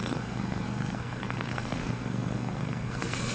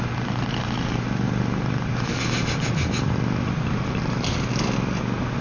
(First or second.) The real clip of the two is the second